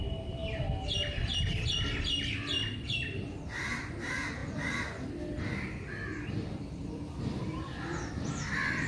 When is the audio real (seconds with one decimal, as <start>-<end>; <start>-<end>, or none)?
0.0-6.4